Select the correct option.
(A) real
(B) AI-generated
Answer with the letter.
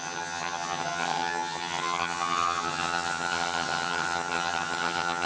B